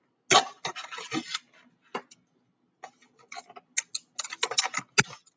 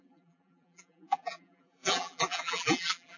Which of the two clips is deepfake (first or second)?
second